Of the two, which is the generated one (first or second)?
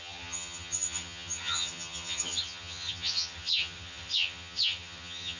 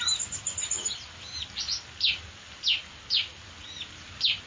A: first